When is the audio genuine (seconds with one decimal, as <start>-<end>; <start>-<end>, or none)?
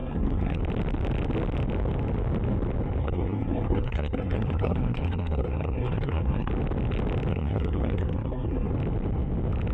0.6-3.0; 6.5-7.3; 8.7-9.7